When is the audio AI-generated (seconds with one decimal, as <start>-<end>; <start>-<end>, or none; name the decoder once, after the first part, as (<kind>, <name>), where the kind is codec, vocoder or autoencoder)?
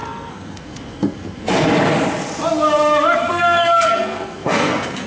0.0-1.7 (codec, SNAC); 3.3-5.1